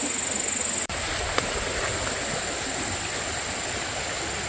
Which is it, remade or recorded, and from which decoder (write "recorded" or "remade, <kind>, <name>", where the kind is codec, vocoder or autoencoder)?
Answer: recorded